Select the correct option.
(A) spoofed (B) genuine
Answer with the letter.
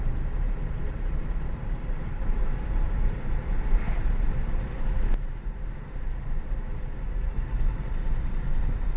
A